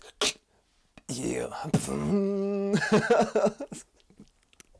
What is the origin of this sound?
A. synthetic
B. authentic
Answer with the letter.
B